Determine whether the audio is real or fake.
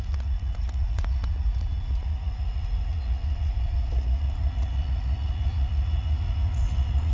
fake